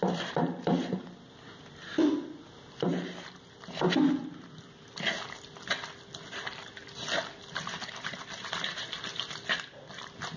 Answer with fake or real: real